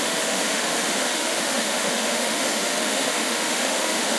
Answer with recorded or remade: remade